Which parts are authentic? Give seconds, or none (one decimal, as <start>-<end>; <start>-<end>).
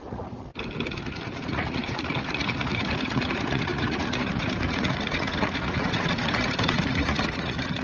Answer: 0.5-1.0